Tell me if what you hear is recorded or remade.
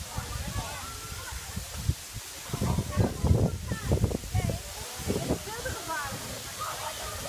recorded